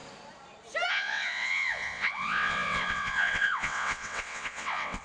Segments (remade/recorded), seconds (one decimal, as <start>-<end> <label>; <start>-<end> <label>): 0.0-0.9 recorded; 0.9-5.0 remade